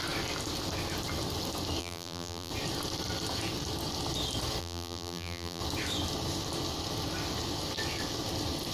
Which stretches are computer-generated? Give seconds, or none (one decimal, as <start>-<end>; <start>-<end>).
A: 1.8-2.5; 4.6-5.6